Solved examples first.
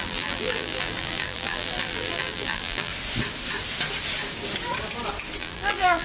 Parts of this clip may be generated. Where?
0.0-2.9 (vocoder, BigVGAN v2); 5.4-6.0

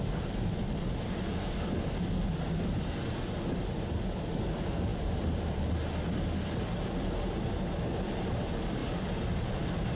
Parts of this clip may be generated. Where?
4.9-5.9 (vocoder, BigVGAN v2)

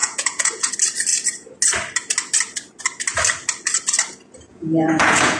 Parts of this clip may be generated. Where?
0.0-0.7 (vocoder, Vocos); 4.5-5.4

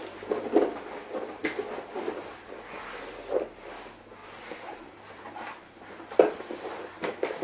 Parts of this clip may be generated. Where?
4.2-5.9 (vocoder, BigVGAN v2)

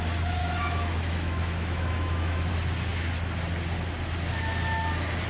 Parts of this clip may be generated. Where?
0.4-2.5 (autoencoder, DAC-VAE)

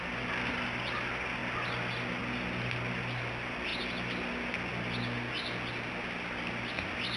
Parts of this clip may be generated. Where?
none